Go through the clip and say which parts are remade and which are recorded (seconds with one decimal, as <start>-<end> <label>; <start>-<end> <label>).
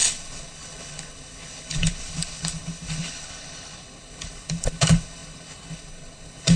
0.0-6.6 remade